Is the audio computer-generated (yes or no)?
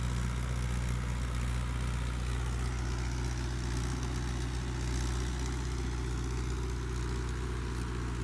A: no